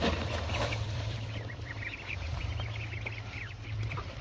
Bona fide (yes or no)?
no